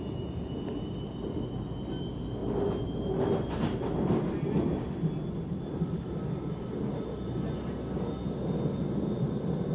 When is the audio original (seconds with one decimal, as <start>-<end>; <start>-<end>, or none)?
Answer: 0.0-9.7